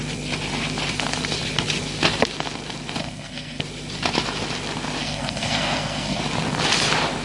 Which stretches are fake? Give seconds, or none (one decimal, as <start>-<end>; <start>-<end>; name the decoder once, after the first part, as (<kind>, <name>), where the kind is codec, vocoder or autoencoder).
3.0-3.6 (codec, SNAC); 5.0-6.2